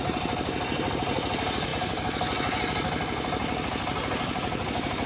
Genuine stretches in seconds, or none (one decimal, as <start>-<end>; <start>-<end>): 0.0-5.1